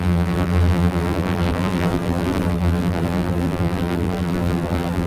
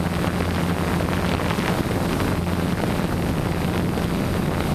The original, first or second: second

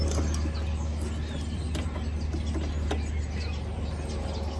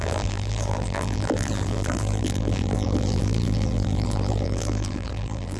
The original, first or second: first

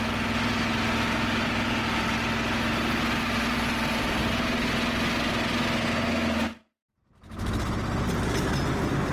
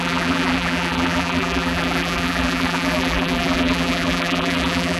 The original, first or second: first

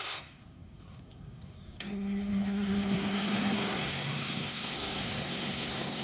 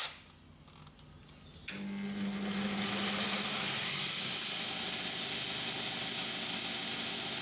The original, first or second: second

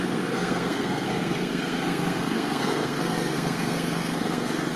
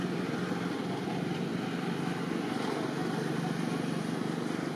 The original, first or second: second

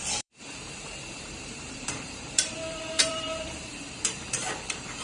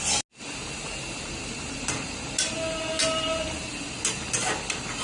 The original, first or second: second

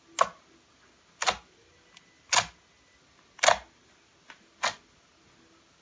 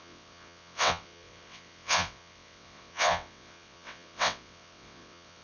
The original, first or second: first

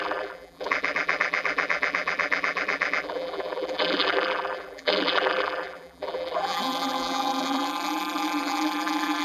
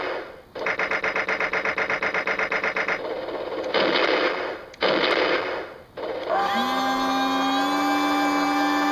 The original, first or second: second